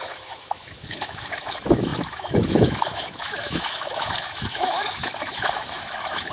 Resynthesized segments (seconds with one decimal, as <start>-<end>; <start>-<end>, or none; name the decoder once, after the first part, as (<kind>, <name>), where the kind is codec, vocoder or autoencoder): 0.0-6.3 (autoencoder, DAC-VAE)